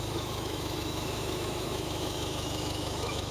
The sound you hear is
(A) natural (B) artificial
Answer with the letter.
B